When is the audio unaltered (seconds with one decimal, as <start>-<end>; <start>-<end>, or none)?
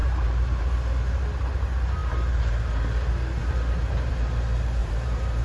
0.6-2.0; 2.7-4.8